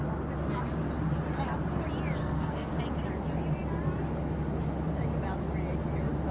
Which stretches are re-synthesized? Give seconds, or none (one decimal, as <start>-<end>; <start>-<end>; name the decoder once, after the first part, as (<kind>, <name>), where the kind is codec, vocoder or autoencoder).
2.2-2.7 (codec, SNAC)